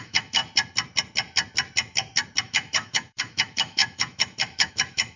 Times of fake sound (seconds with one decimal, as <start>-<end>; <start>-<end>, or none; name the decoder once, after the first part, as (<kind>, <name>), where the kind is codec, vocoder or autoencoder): 0.0-0.4 (autoencoder, DAC-VAE); 2.4-5.2